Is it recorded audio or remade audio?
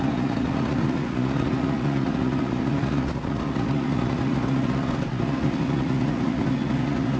remade